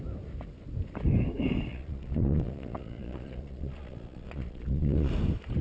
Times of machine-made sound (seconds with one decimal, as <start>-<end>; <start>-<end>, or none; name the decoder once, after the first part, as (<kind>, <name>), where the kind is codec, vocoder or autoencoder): 1.7-5.1 (vocoder, Vocos)